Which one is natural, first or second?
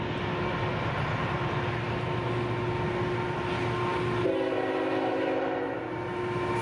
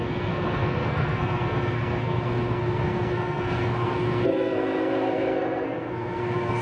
first